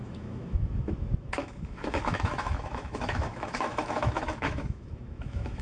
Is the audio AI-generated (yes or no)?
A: yes